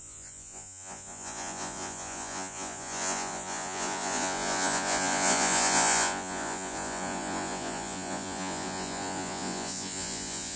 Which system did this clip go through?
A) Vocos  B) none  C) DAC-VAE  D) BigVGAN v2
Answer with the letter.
A